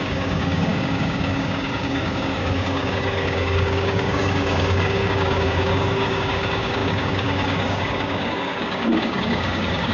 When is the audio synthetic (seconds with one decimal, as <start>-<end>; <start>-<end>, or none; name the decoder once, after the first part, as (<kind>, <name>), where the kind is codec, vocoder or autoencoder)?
0.0-9.9 (codec, DAC)